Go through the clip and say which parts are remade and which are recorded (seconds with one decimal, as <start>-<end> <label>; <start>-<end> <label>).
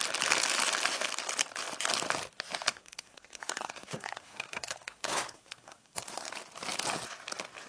0.0-2.7 recorded; 2.7-6.3 remade; 6.3-7.7 recorded